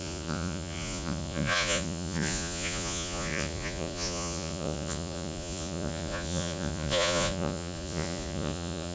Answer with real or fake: fake